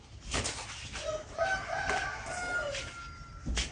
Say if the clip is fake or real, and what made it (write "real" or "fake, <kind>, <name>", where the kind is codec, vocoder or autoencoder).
real